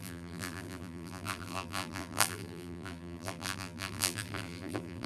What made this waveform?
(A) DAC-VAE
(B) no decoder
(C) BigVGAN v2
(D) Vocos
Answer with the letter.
C